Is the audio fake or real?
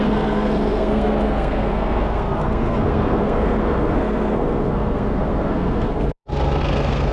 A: fake